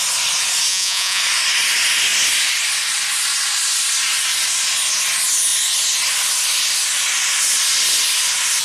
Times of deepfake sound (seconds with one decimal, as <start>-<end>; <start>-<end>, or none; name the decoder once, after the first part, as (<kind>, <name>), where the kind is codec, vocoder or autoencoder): 0.7-1.2 (vocoder, Vocos)